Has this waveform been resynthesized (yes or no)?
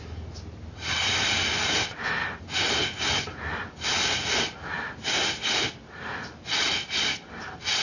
no